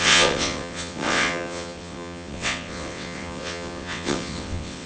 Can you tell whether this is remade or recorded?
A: remade